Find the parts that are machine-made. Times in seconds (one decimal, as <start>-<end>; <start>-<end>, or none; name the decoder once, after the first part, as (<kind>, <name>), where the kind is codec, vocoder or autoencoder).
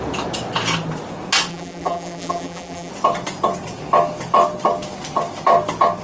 1.5-2.9 (vocoder, BigVGAN v2)